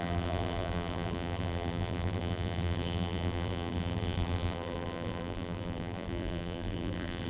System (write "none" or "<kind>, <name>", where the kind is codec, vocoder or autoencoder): vocoder, BigVGAN v2